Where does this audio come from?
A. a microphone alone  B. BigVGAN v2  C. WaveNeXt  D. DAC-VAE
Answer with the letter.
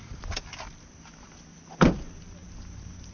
A